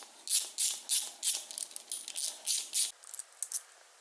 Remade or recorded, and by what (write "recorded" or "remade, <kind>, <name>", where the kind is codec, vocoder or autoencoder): recorded